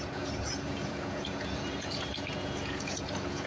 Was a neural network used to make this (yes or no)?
yes